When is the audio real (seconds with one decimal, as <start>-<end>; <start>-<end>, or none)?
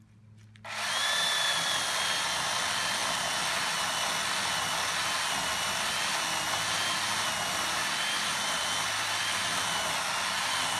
0.0-10.8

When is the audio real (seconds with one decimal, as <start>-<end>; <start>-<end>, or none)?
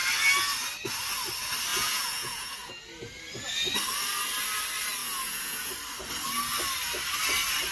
0.0-1.7; 2.7-5.0; 5.7-7.7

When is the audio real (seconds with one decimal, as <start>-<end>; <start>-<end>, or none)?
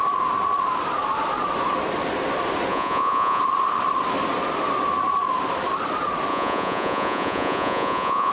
0.0-2.7; 3.4-6.3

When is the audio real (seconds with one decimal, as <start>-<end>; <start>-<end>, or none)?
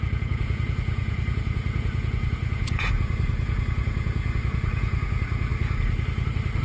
5.5-6.6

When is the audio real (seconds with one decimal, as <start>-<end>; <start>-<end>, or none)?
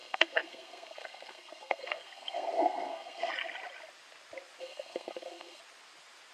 3.3-4.6; 5.6-6.3